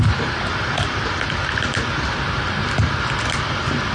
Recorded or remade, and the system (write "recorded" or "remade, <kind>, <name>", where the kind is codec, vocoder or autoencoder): recorded